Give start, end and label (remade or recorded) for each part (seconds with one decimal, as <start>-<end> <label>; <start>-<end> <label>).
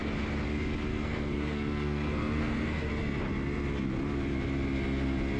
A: 0.0-0.9 recorded; 0.9-2.9 remade; 2.9-5.4 recorded